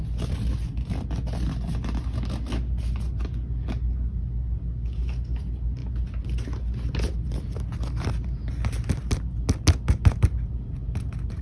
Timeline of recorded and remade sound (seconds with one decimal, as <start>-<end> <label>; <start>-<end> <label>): 0.0-11.4 recorded